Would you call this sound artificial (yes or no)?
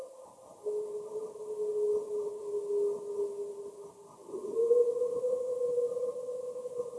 no